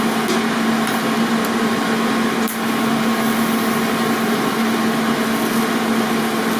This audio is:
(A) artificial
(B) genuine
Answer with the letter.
B